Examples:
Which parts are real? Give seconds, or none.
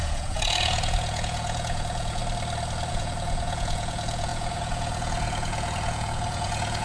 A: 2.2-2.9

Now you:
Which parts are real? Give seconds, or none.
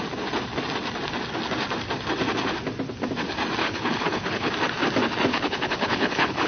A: 0.0-3.6; 4.5-5.3